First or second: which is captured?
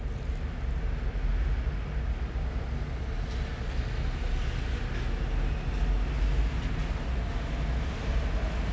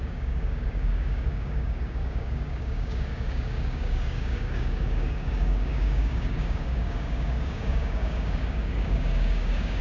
first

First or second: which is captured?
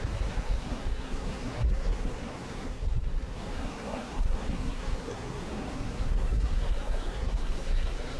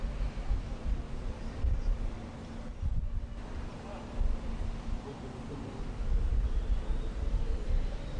second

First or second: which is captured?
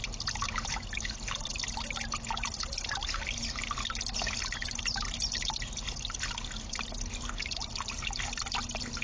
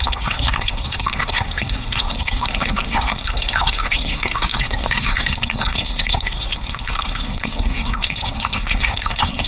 first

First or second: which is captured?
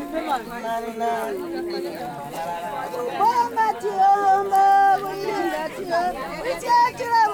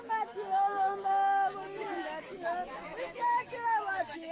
first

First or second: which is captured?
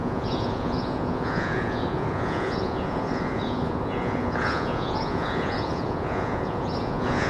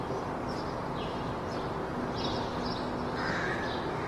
second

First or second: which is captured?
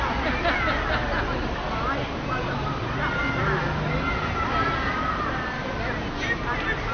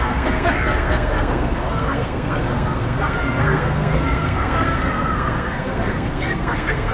first